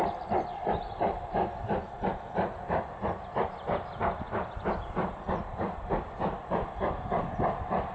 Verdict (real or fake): fake